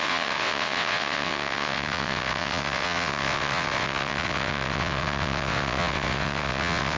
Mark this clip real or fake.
fake